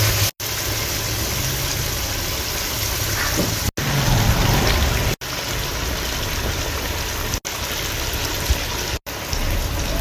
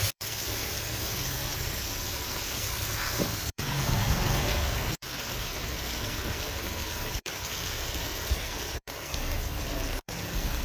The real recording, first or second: first